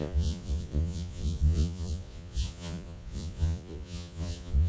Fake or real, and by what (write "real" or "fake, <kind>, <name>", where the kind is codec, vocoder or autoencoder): fake, vocoder, Vocos